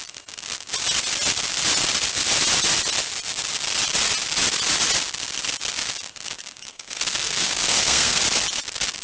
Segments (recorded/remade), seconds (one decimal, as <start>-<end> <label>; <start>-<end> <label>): 0.0-6.7 recorded; 6.7-8.2 remade; 8.2-9.0 recorded